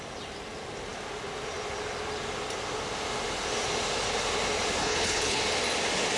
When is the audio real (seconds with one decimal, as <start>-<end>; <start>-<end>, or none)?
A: 0.0-4.8; 5.4-6.2